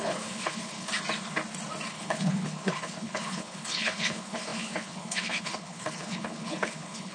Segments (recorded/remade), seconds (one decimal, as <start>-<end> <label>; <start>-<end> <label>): 0.0-0.9 remade; 0.9-1.9 recorded; 1.9-7.1 remade